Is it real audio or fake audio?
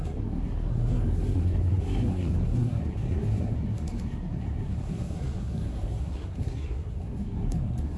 fake